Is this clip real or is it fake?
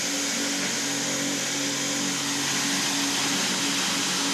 real